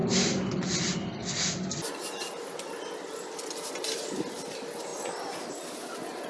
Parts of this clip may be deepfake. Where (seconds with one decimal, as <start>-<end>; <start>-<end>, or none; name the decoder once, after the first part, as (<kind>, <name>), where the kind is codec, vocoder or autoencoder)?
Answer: none